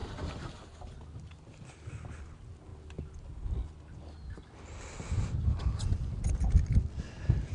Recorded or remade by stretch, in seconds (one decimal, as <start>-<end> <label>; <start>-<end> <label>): 0.0-0.5 remade; 0.5-7.5 recorded